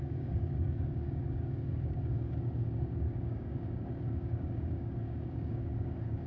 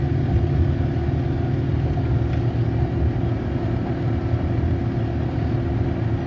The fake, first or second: first